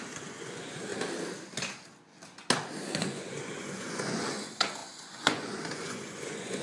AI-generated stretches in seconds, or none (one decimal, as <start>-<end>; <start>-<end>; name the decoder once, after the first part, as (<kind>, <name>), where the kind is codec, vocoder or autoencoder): 0.0-0.9 (vocoder, Vocos); 3.0-6.6